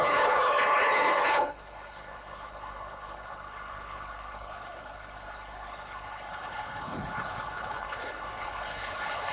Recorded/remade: remade